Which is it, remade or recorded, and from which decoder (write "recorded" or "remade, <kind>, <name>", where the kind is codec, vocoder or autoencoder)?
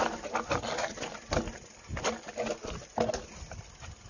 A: recorded